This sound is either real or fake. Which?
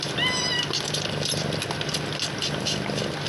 real